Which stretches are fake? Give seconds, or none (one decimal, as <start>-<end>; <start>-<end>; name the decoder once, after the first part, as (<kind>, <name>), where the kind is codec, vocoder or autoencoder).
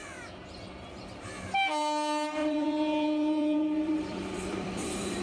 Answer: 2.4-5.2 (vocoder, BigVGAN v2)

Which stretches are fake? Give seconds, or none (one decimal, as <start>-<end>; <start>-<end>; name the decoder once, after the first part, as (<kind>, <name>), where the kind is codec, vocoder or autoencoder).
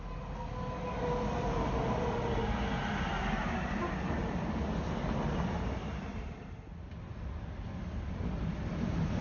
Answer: none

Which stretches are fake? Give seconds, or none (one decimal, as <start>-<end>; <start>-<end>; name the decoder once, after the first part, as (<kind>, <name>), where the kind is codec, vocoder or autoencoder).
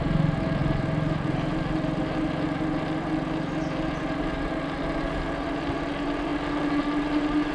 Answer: none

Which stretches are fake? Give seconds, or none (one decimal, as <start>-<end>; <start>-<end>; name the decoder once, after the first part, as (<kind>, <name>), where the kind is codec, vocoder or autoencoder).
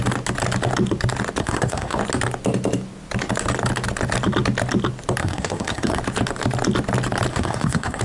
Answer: 1.4-2.0 (codec, SNAC); 5.2-6.0; 7.3-8.0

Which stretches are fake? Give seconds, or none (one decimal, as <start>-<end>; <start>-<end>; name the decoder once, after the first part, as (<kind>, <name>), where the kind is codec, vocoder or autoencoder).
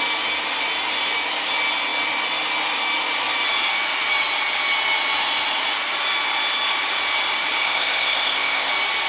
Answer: 7.6-8.7 (codec, ZipCodec)